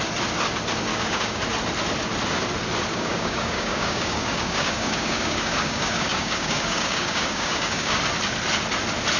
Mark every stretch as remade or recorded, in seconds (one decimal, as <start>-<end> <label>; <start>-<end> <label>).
0.0-0.9 recorded; 0.9-1.4 remade; 1.4-2.9 recorded; 2.9-8.0 remade; 8.0-9.2 recorded